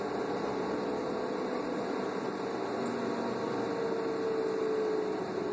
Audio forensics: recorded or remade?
recorded